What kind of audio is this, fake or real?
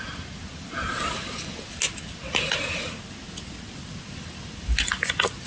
real